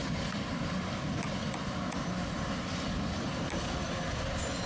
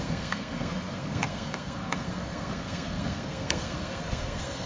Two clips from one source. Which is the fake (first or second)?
second